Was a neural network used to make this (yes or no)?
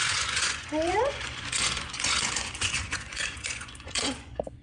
yes